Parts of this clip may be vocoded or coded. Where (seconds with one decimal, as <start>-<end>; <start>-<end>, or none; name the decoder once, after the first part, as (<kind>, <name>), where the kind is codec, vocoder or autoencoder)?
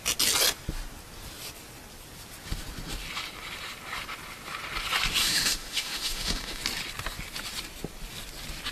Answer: 5.2-6.6 (autoencoder, DAC-VAE)